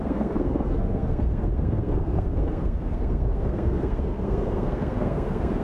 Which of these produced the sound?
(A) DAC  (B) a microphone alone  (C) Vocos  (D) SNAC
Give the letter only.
D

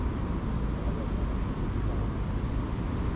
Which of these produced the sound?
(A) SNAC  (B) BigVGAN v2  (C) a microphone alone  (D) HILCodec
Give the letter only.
C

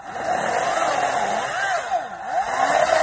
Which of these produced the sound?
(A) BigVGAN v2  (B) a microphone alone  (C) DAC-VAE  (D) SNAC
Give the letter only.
B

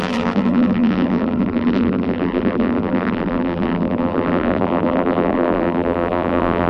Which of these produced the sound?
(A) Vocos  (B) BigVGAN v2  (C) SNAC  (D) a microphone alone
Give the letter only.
B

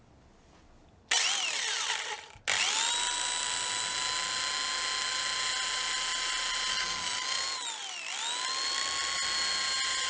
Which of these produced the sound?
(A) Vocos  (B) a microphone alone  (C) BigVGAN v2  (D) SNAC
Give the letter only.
B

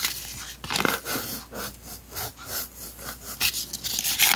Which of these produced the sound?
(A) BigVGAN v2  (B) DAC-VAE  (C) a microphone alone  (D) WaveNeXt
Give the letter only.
C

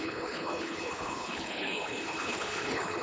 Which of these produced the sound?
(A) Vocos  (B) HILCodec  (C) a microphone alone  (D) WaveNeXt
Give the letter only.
B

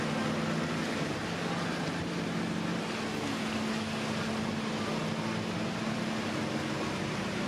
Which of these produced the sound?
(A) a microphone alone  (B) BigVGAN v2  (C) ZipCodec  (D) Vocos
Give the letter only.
A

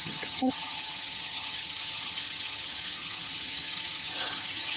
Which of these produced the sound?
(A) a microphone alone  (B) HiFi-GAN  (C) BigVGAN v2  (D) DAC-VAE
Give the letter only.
B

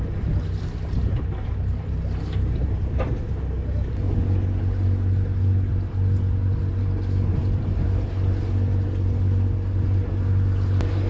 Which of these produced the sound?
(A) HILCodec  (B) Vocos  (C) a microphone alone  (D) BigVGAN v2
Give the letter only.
C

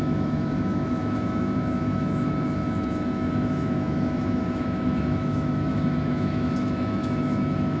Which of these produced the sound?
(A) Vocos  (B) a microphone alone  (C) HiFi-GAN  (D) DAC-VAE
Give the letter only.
D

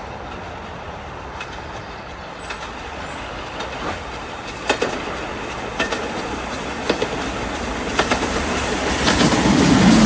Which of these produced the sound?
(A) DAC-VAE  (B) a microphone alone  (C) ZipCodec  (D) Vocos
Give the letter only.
B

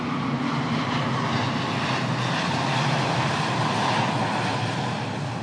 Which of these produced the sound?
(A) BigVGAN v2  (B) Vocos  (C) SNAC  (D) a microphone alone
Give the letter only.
D